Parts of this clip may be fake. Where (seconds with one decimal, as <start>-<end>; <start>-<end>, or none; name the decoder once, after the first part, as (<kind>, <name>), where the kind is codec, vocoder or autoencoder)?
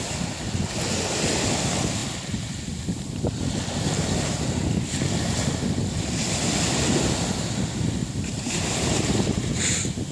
8.0-9.6 (vocoder, BigVGAN v2)